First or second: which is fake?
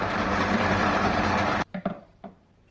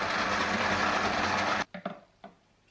first